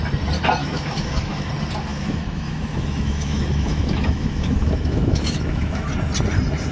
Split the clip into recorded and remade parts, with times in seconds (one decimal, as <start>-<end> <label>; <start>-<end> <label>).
0.0-0.6 recorded; 0.6-1.5 remade; 1.5-1.9 recorded; 1.9-5.9 remade; 5.9-6.7 recorded